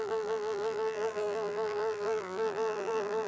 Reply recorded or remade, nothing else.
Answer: remade